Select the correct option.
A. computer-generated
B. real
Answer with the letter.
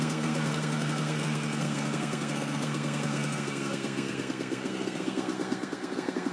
A